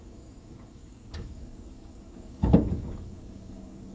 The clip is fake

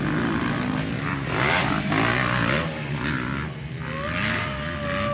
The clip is real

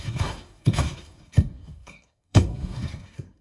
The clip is fake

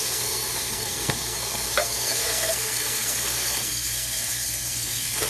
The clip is fake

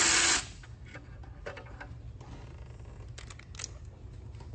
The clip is real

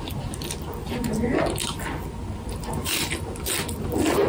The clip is real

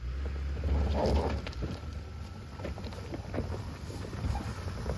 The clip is real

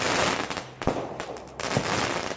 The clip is real